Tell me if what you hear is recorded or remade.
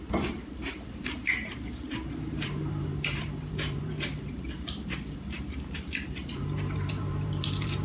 remade